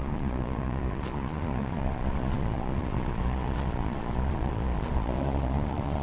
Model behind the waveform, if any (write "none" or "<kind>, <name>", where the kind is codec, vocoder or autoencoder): vocoder, Vocos